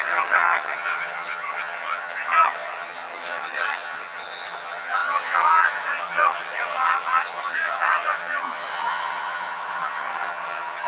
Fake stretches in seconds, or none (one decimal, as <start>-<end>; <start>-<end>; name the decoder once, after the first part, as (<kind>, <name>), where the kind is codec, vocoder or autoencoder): 0.0-10.9 (vocoder, HiFi-GAN)